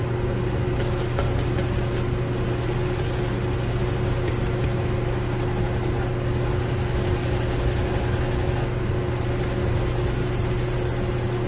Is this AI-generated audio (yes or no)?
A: no